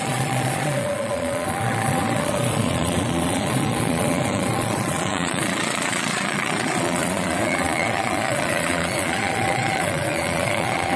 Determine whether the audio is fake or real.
fake